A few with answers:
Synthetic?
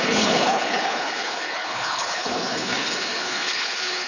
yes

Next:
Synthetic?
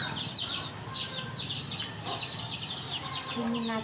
no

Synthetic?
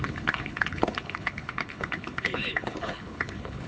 yes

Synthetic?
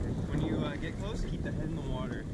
no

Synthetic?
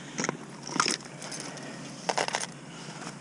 no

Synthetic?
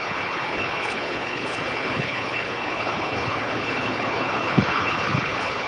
yes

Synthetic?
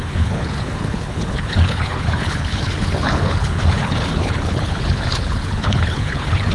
yes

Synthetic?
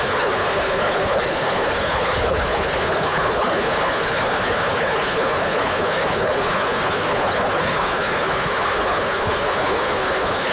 yes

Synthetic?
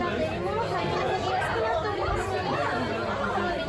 no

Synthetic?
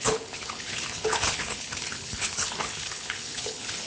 yes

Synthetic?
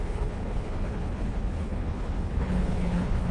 yes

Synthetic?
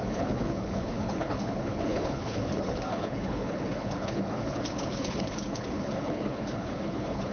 yes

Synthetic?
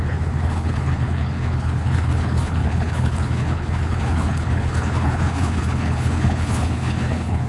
yes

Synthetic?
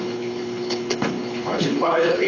yes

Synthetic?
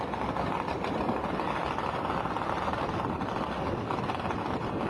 no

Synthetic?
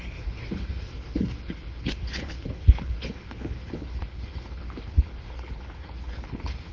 yes